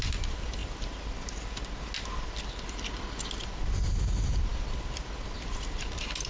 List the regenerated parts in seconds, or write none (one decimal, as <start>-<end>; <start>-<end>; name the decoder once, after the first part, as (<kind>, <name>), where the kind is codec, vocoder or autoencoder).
none